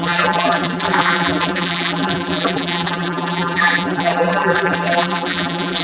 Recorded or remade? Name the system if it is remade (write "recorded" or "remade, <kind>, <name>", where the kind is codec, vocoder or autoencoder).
remade, vocoder, BigVGAN v2